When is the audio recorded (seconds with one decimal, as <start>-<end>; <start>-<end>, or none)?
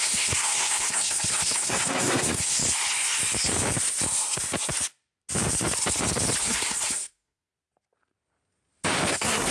2.6-6.4; 7.5-9.1